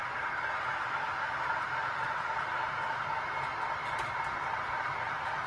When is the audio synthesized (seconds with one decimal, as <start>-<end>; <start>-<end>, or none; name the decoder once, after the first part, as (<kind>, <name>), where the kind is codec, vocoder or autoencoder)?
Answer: 0.0-3.3 (vocoder, BigVGAN v2); 3.8-5.5